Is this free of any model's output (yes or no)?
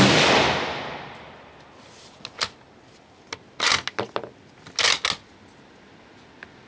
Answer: yes